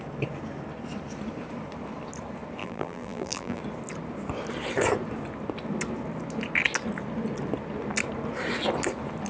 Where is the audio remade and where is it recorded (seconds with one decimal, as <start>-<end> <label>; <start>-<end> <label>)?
0.0-2.6 recorded; 2.6-3.6 remade; 3.6-9.3 recorded